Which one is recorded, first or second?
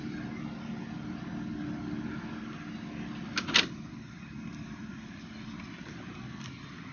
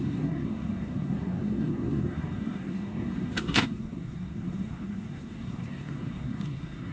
first